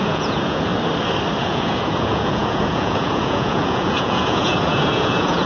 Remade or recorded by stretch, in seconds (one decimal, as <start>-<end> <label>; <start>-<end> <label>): 0.0-0.7 remade; 0.7-1.4 recorded; 1.4-5.5 remade